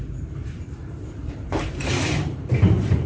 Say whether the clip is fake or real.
fake